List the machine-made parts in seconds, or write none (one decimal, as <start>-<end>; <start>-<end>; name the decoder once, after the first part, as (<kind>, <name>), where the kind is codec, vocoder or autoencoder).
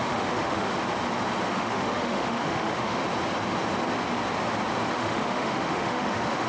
0.0-0.7 (autoencoder, DAC-VAE); 1.5-3.0; 4.9-6.5